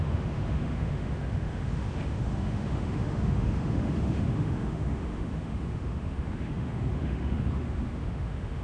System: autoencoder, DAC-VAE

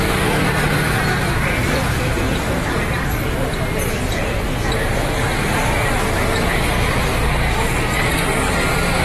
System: none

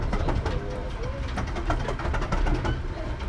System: none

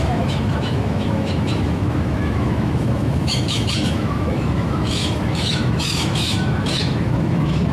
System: autoencoder, DAC-VAE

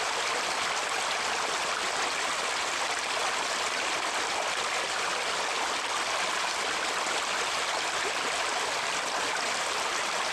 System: none